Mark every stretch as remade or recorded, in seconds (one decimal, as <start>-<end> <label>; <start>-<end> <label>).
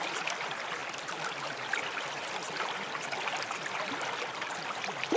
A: 0.0-5.2 recorded